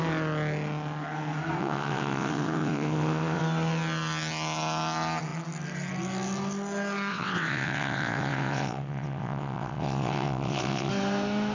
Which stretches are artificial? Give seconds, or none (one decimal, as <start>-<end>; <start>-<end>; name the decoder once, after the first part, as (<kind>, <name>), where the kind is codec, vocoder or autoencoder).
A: 1.6-3.4 (vocoder, WaveNeXt); 7.1-10.9